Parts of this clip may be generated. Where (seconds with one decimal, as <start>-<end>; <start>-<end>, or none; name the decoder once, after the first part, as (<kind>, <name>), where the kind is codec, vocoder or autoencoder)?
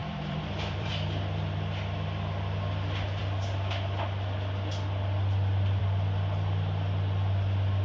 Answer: 0.0-0.9 (vocoder, BigVGAN v2)